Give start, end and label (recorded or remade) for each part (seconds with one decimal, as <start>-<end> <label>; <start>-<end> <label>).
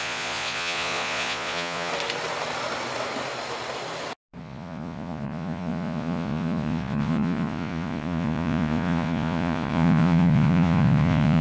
0.0-1.9 remade; 1.9-4.4 recorded; 4.4-11.4 remade